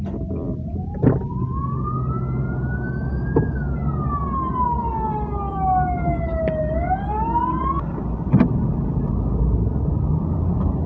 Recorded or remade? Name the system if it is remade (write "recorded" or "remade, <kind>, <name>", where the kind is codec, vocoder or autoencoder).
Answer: recorded